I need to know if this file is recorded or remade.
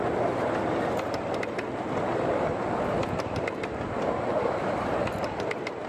recorded